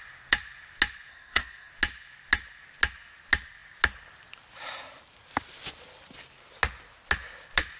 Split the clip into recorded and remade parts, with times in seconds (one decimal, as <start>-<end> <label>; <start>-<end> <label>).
0.0-1.1 recorded; 1.1-1.7 remade; 1.7-7.8 recorded